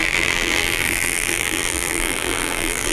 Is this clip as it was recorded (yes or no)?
no